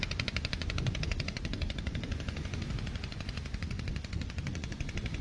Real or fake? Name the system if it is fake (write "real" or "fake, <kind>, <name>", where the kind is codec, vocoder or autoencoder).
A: fake, vocoder, Vocos